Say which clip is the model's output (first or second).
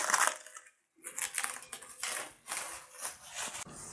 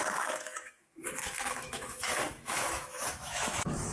second